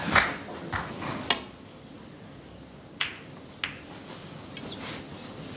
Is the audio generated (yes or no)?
no